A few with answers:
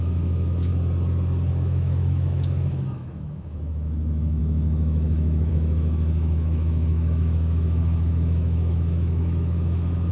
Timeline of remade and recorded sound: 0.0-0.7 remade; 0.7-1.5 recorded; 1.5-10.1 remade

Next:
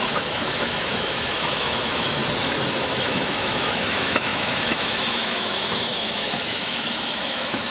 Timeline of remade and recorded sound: 0.0-2.2 remade; 2.2-2.7 recorded; 2.7-7.7 remade

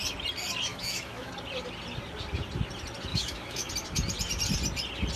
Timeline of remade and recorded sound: 0.0-0.7 recorded; 0.7-1.3 remade; 1.3-3.1 recorded; 3.1-3.7 remade; 3.7-5.2 recorded

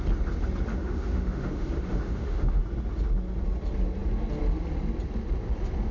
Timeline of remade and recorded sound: 0.0-0.7 recorded; 0.7-2.6 remade; 2.6-5.9 recorded